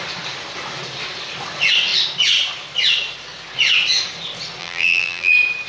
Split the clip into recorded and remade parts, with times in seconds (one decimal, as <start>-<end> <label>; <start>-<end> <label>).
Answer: 0.0-4.6 recorded; 4.6-5.3 remade; 5.3-5.7 recorded